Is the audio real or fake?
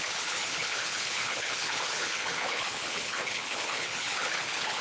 fake